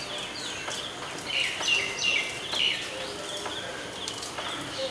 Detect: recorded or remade recorded